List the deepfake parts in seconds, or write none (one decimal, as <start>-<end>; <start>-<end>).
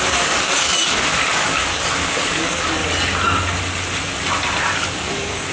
0.0-2.8; 4.9-5.5